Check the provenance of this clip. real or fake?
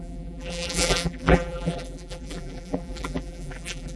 fake